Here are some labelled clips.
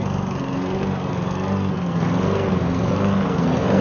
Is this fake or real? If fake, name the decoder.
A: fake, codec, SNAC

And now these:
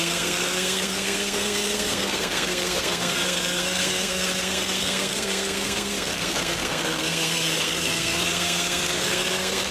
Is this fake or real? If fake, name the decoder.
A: fake, codec, SNAC